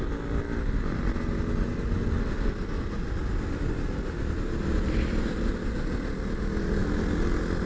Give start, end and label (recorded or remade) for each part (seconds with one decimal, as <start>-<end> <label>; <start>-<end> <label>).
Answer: 0.0-7.7 recorded